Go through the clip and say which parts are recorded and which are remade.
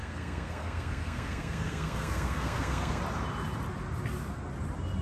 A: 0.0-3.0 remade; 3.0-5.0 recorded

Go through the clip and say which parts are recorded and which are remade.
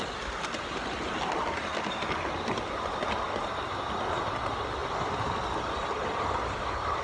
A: 0.0-7.0 recorded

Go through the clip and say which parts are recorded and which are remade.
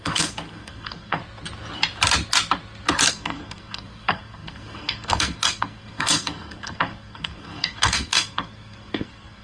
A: 0.0-1.2 remade; 1.2-3.1 recorded; 3.1-9.4 remade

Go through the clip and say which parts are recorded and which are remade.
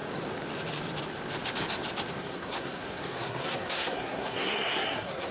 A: 0.0-2.2 recorded; 2.2-5.3 remade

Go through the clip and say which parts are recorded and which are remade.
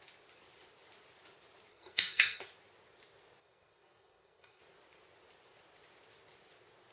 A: 0.0-1.7 recorded; 1.7-2.5 remade; 2.5-3.4 recorded; 3.4-4.6 remade; 4.6-6.9 recorded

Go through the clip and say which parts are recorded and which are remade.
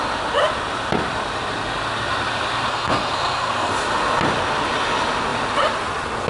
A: 0.0-2.7 recorded; 2.7-3.7 remade; 3.7-6.3 recorded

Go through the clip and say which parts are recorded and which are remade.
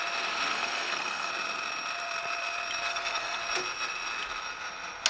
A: 0.0-0.5 recorded; 0.5-1.3 remade; 1.3-2.9 recorded; 2.9-3.4 remade; 3.4-5.1 recorded